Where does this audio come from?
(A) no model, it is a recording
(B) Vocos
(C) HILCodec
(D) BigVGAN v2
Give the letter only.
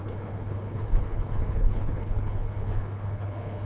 C